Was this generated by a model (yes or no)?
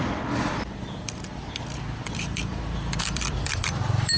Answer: yes